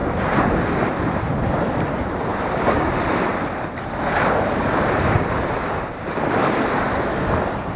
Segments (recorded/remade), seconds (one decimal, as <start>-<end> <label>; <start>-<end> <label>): 0.0-2.3 recorded; 2.3-2.9 remade; 2.9-7.8 recorded